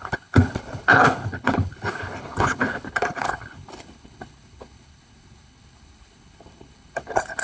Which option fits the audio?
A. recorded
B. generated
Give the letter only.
B